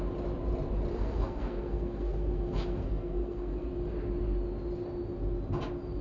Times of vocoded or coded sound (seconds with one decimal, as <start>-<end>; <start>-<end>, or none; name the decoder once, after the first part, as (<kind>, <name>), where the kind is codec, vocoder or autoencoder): 0.9-3.7 (codec, SNAC)